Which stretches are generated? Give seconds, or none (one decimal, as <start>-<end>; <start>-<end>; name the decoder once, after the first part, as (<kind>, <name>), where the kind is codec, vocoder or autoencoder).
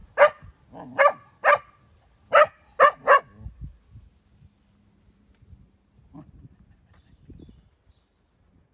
none